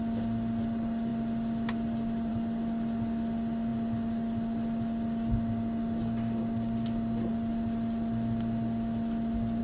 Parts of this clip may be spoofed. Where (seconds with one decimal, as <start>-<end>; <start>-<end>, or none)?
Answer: none